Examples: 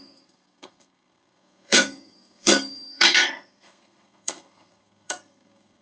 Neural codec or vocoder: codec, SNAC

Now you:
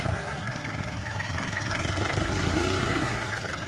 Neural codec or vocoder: codec, SNAC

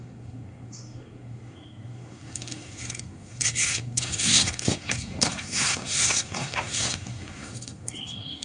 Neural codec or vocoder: codec, SNAC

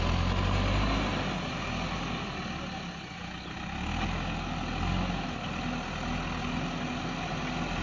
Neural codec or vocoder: none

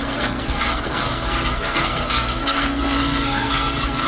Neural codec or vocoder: codec, SNAC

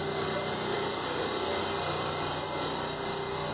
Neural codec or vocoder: none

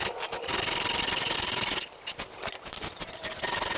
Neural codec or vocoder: none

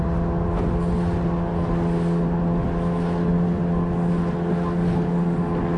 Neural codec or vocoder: none